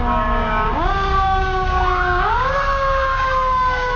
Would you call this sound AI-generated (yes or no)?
yes